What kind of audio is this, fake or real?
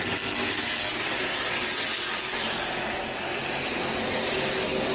real